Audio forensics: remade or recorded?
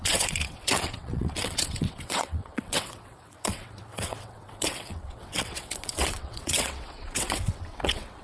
remade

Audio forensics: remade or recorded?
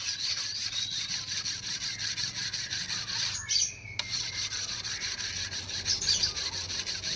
recorded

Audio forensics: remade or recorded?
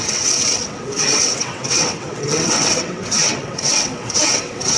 remade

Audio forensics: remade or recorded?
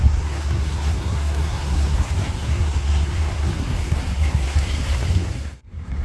remade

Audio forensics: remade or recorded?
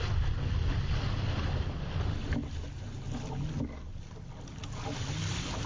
recorded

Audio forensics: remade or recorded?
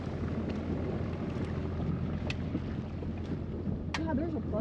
recorded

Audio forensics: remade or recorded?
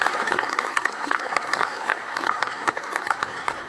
remade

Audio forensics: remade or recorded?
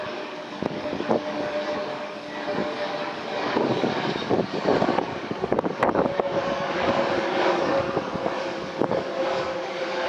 remade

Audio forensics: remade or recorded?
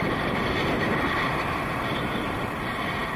recorded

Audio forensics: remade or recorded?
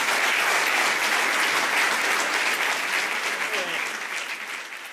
recorded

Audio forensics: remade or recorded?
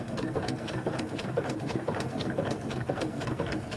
remade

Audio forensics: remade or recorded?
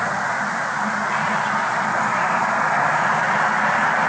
recorded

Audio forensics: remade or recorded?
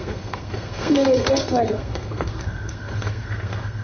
remade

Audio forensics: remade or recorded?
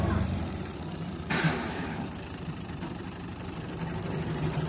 remade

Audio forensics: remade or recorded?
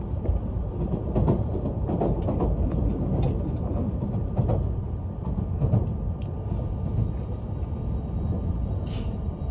recorded